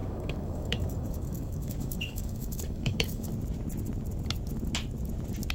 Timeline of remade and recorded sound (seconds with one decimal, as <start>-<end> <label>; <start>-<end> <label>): 0.0-3.3 remade; 3.3-5.5 recorded